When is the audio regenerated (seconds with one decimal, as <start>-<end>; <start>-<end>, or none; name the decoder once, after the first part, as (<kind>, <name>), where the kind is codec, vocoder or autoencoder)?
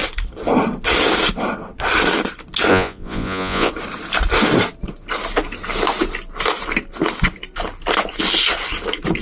2.7-3.7 (vocoder, Vocos)